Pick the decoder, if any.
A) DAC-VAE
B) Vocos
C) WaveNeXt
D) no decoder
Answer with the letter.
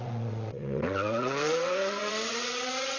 C